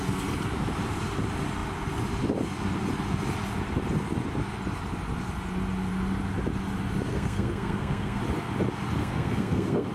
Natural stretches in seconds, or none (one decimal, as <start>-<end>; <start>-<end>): 0.0-7.1; 8.2-9.0

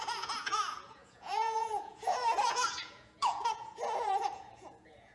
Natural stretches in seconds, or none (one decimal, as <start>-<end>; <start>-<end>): none

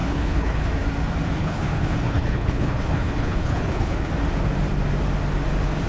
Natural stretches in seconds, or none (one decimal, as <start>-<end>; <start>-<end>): 0.7-1.4; 4.1-5.9

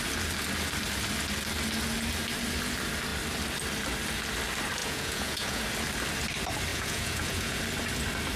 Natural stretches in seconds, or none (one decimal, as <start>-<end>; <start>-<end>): 0.0-4.8; 5.6-6.7; 7.6-8.4

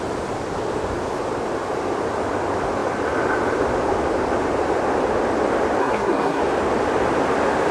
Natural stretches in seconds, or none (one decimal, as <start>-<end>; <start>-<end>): 0.0-5.8; 6.4-7.7